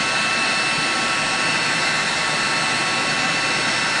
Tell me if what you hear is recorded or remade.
recorded